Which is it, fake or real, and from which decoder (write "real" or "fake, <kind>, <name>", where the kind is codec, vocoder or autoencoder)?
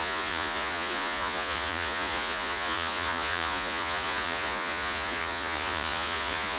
fake, vocoder, Vocos